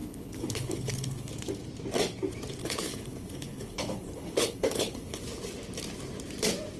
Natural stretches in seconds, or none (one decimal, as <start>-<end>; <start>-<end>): 1.3-2.6; 5.2-6.8